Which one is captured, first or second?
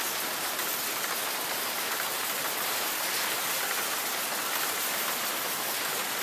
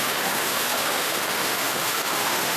first